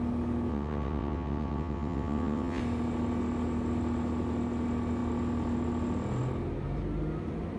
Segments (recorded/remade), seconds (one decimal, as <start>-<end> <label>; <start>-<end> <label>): 0.0-0.5 recorded; 0.5-2.6 remade; 2.6-7.6 recorded